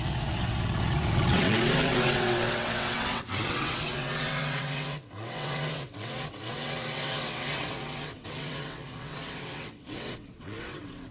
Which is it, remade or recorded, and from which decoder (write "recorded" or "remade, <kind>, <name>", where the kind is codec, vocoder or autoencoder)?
remade, vocoder, WaveNeXt